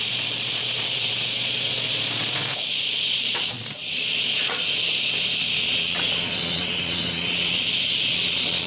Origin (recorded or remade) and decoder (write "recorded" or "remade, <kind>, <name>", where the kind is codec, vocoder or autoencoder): remade, vocoder, Vocos